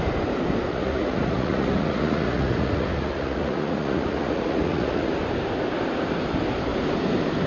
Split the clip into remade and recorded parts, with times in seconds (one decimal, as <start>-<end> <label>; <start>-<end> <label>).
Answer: 0.0-0.7 recorded; 0.7-5.1 remade; 5.1-7.5 recorded